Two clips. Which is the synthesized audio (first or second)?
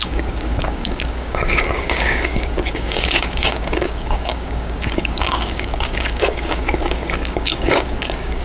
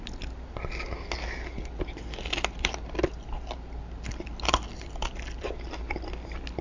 first